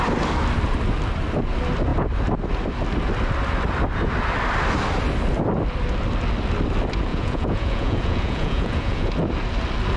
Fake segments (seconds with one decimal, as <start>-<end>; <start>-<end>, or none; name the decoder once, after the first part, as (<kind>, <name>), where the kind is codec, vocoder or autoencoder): 7.1-9.1 (vocoder, Vocos)